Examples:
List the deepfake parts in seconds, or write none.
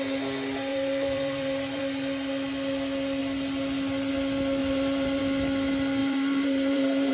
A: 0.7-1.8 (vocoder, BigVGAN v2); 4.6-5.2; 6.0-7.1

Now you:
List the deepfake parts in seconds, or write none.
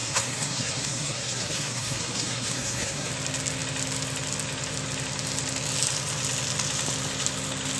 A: 0.0-3.1 (codec, SNAC)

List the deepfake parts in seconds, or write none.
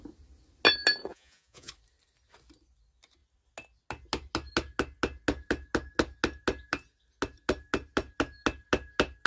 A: 1.1-1.7 (vocoder, Vocos)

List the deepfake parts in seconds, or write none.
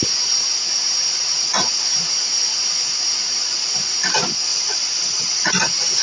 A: 4.5-5.5 (vocoder, WaveNeXt)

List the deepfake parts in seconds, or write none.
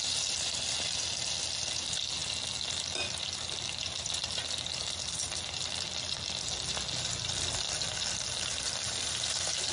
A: none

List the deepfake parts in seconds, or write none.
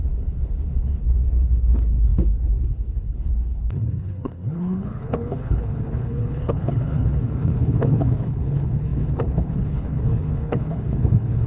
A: 0.0-11.5 (codec, HILCodec)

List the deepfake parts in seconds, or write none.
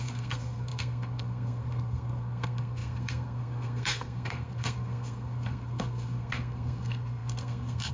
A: 0.0-7.9 (codec, SNAC)